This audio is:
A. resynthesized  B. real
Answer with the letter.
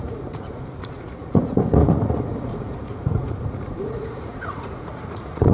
A